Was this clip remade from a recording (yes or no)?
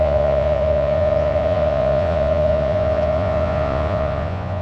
yes